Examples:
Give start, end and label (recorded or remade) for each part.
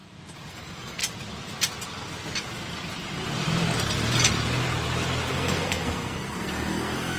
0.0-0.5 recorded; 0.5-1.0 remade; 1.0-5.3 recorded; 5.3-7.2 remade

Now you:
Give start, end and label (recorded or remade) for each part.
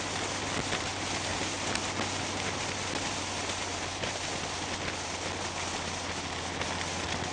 0.0-7.3 recorded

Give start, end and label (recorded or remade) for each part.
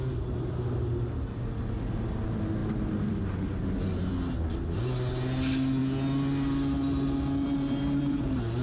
0.0-8.6 recorded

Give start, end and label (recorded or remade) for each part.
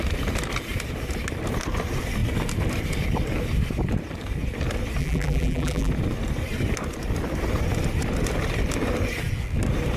0.0-5.0 recorded; 5.0-5.9 remade; 5.9-10.0 recorded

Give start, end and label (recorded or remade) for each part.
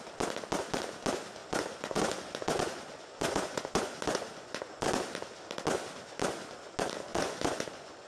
0.0-1.4 recorded; 1.4-4.9 remade; 4.9-7.1 recorded; 7.1-8.1 remade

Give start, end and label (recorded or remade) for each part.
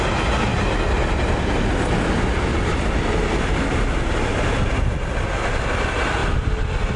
0.0-7.0 recorded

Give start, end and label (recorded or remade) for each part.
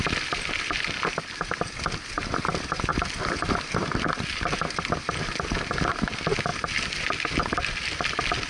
0.0-8.5 recorded